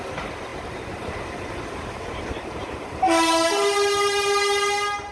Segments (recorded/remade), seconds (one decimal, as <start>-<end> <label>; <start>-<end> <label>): 0.0-5.1 recorded